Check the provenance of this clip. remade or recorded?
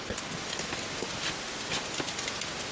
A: recorded